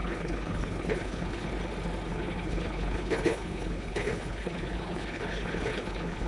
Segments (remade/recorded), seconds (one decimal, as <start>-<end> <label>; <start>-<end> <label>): 0.0-1.5 remade; 1.5-2.1 recorded; 2.1-6.3 remade